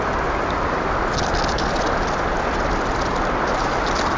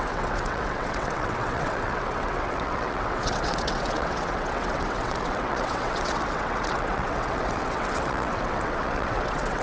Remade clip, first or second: second